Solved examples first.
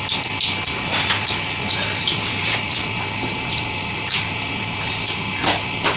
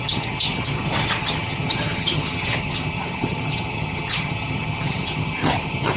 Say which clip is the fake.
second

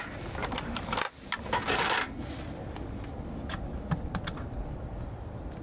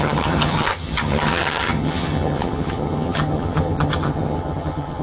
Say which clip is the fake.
second